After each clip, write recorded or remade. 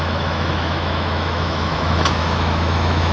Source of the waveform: remade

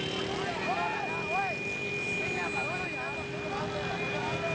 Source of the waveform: recorded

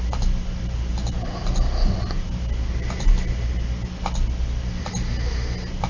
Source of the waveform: recorded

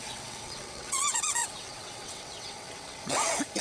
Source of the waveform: remade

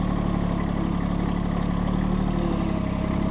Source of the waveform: recorded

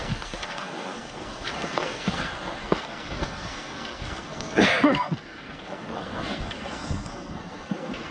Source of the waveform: remade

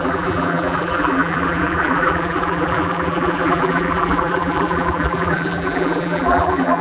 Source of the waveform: remade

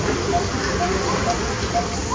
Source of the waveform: recorded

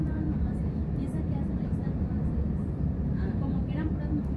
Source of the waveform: remade